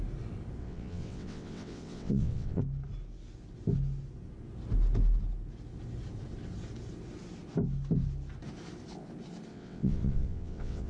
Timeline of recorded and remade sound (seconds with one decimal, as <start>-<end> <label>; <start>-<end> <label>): 0.0-0.6 recorded; 0.6-2.6 remade; 2.6-9.5 recorded; 9.5-10.9 remade